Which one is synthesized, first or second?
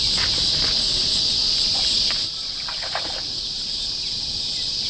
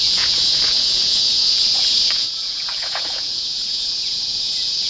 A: second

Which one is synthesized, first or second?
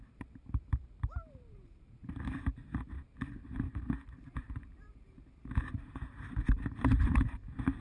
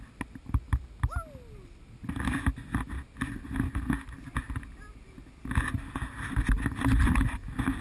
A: first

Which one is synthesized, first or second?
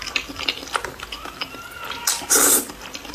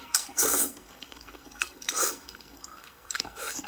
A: second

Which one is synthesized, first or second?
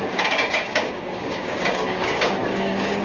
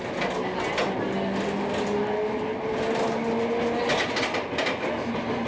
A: first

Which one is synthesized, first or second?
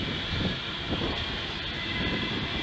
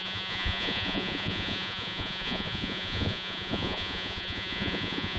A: second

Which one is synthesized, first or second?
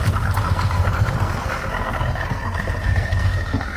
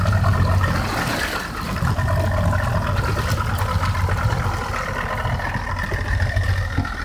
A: first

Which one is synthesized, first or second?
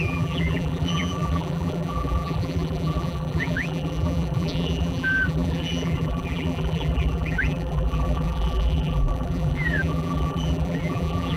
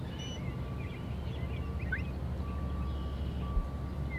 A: first